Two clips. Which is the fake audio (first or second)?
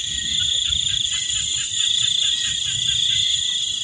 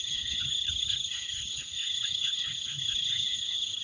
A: second